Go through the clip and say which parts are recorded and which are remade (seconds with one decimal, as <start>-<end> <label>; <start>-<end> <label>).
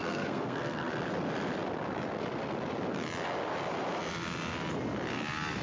0.0-0.9 remade; 0.9-5.6 recorded